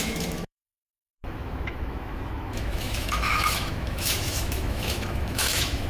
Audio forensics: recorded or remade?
remade